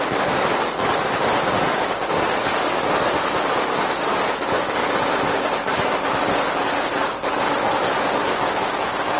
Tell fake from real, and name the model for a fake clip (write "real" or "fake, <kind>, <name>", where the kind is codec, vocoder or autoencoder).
real